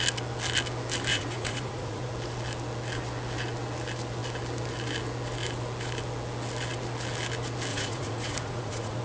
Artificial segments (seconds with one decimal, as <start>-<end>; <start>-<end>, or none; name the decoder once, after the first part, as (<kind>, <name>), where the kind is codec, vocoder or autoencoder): 1.1-2.1 (vocoder, Vocos); 7.7-9.0